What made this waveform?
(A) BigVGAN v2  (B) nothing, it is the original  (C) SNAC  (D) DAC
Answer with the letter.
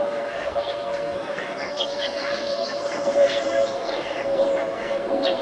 C